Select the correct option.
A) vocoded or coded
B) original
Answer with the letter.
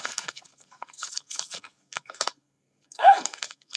A